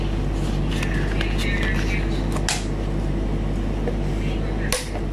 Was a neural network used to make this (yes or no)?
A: no